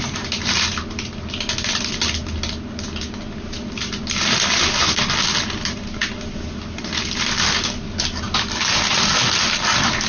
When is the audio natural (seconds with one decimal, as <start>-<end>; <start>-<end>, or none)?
0.0-10.1